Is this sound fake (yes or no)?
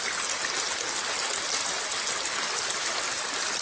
no